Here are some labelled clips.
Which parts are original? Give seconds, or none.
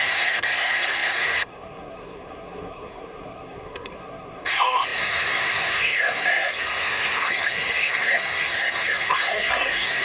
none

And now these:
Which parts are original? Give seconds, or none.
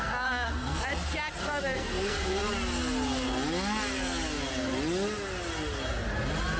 0.9-1.4; 2.4-6.6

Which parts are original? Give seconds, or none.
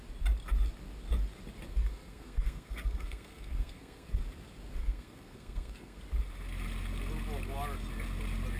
0.0-1.7; 4.2-4.8; 6.0-8.6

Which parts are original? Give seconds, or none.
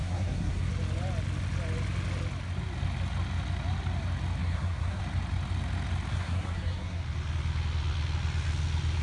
0.7-4.4; 5.0-6.1; 7.0-9.0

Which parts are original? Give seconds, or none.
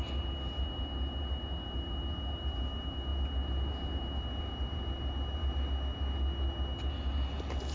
0.0-7.7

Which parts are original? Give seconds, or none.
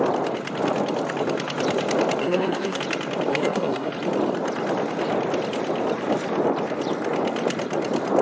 0.0-2.2; 2.8-3.3; 3.9-8.2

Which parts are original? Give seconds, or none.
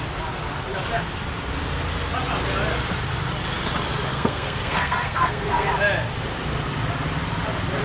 0.0-4.1; 5.7-7.8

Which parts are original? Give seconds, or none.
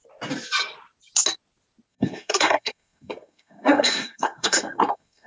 0.0-1.9